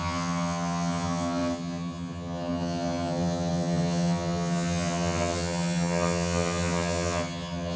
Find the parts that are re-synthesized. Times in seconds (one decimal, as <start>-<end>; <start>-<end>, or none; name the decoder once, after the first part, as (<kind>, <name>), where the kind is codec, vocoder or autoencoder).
0.0-7.8 (vocoder, HiFi-GAN)